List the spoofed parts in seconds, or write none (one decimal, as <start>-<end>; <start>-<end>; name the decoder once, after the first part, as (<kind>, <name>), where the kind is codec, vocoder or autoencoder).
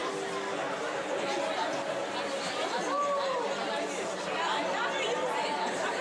none